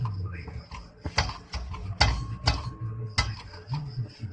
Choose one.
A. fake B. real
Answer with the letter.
B